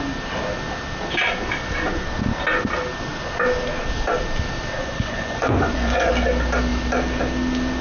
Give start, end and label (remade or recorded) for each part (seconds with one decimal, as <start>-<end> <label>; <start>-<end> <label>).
0.0-4.8 recorded; 4.8-6.1 remade; 6.1-7.8 recorded